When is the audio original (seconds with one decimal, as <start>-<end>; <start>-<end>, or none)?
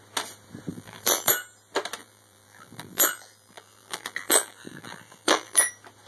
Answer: 0.0-0.7; 1.3-2.0; 5.6-6.1